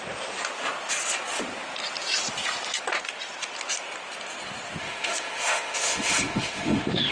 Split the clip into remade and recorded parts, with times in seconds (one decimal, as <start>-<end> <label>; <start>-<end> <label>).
0.0-4.8 recorded; 4.8-7.1 remade